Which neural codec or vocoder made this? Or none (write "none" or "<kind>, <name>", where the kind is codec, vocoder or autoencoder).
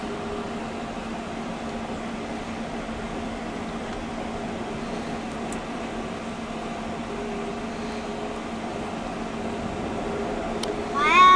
none